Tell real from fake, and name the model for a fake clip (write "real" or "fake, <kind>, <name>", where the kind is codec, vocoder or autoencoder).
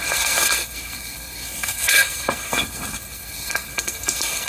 fake, codec, SNAC